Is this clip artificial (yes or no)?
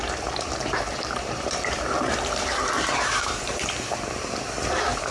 yes